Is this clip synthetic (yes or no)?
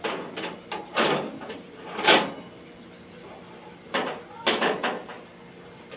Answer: no